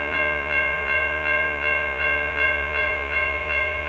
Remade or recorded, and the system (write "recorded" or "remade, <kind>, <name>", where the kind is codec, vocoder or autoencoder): remade, vocoder, Vocos